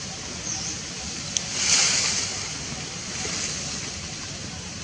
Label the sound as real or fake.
real